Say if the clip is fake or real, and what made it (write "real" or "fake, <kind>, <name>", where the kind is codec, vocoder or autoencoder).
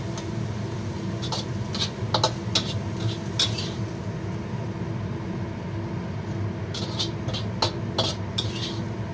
real